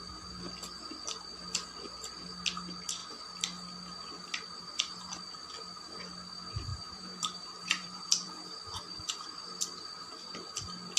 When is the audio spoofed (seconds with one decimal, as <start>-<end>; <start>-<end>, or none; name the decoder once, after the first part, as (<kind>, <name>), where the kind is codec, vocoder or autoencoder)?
6.7-8.3 (vocoder, BigVGAN v2)